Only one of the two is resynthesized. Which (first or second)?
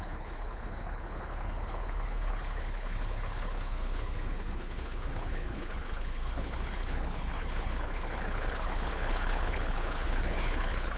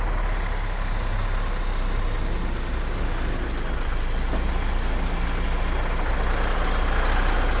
first